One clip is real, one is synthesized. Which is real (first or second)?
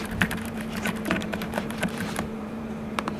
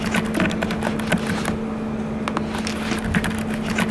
second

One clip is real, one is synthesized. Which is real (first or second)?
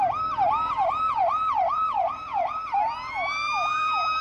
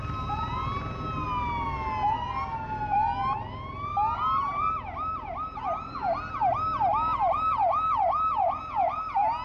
second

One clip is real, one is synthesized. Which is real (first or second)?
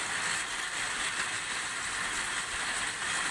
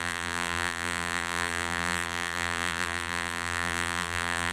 first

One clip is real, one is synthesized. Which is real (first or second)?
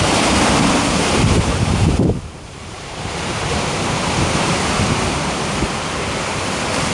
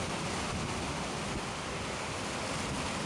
second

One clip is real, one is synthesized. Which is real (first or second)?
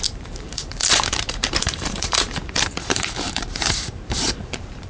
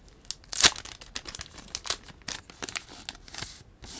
second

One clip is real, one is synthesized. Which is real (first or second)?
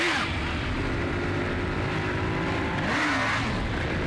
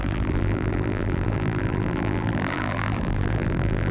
first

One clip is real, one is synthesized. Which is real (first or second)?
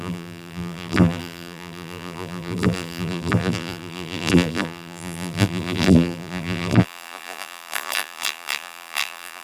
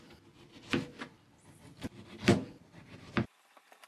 second